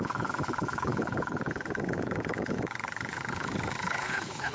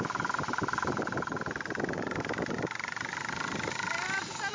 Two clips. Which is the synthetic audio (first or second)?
first